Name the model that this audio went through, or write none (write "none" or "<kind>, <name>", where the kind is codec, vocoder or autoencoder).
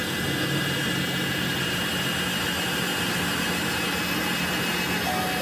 none